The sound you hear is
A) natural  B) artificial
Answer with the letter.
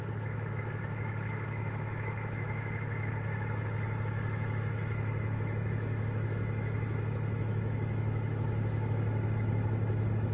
B